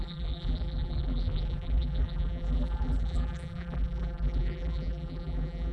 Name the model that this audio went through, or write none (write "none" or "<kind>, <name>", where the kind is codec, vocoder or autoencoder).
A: vocoder, BigVGAN v2